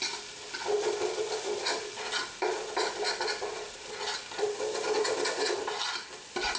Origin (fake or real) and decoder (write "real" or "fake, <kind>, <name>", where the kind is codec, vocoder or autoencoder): real